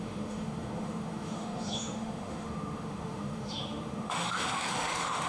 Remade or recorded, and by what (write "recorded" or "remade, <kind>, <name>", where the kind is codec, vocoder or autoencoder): remade, autoencoder, DAC-VAE